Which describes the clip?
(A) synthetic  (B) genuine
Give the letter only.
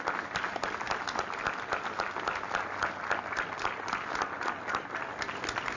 B